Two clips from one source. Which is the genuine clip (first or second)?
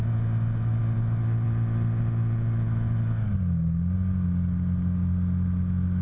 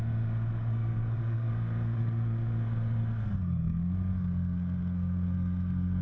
first